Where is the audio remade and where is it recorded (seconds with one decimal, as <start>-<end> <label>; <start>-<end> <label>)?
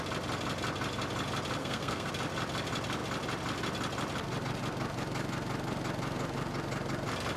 0.0-1.6 recorded; 1.6-2.1 remade; 2.1-7.4 recorded